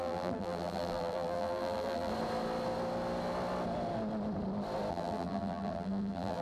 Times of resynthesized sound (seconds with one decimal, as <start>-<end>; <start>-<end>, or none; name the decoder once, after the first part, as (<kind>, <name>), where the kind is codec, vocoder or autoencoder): 0.0-2.1 (vocoder, BigVGAN v2); 4.9-6.4

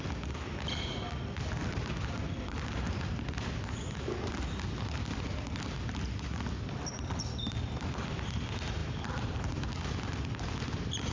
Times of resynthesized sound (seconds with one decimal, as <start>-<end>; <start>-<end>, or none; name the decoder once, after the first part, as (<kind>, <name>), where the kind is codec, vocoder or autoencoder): none

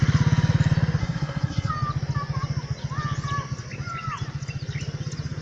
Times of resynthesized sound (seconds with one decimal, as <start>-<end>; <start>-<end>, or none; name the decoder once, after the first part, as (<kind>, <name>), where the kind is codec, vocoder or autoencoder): 1.0-1.7 (codec, SNAC)

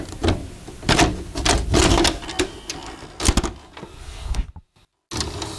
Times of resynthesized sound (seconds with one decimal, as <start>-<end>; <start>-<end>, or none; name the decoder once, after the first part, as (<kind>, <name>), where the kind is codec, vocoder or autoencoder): 4.0-4.5 (codec, SNAC)

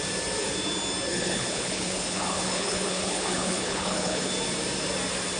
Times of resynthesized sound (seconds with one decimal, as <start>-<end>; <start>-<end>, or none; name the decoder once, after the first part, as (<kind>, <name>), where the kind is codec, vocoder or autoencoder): 1.1-4.3 (codec, HILCodec)